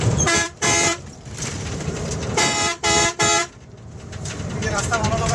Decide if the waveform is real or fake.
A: fake